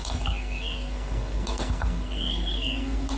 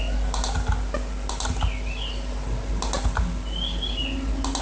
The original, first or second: second